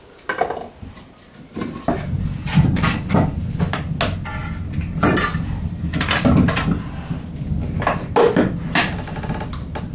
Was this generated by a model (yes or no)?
no